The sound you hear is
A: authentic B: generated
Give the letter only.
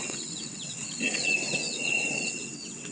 B